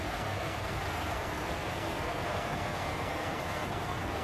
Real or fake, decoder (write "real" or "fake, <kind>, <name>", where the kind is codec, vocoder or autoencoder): fake, codec, SNAC